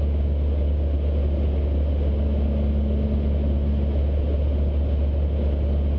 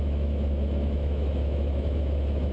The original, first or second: first